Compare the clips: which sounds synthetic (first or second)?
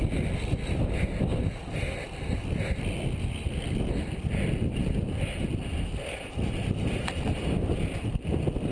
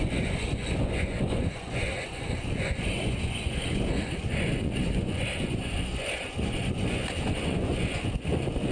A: second